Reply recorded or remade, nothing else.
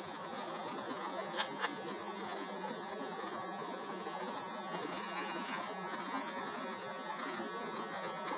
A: remade